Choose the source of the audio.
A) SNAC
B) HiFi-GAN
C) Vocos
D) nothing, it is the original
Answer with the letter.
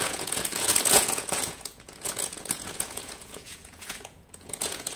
C